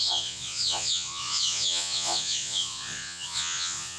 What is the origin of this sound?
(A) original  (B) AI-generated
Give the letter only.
B